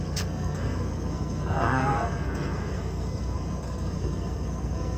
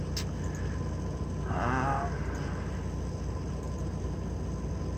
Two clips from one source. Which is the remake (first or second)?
first